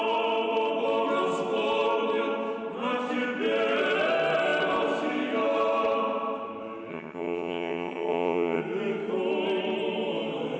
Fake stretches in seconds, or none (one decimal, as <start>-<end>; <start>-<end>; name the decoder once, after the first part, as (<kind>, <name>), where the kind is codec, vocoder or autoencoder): 6.9-8.6 (vocoder, HiFi-GAN)